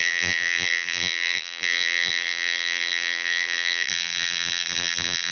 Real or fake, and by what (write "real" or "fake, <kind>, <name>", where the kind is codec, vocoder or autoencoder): fake, vocoder, BigVGAN v2